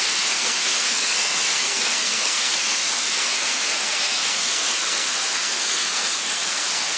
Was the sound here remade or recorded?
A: remade